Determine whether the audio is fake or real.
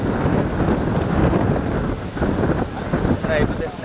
real